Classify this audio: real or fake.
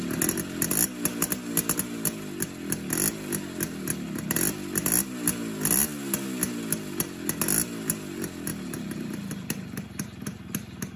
real